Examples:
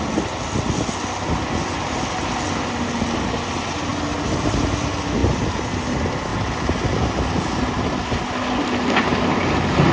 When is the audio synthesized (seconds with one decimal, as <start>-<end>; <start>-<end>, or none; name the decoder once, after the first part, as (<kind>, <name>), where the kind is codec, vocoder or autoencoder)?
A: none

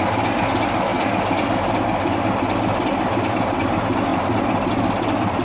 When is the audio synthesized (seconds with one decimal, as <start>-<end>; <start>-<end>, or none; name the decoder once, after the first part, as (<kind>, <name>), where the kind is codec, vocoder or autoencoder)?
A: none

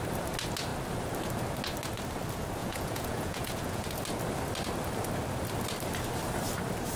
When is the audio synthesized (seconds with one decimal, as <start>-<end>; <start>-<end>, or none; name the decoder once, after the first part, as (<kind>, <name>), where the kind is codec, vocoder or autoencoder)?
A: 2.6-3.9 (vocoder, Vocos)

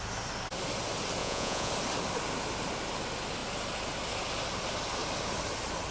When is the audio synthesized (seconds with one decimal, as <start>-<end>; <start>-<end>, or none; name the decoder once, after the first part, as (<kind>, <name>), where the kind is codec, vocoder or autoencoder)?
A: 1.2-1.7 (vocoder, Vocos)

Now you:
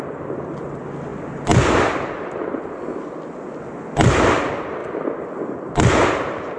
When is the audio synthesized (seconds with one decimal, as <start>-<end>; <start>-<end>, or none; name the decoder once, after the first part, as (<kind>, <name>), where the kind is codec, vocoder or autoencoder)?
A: none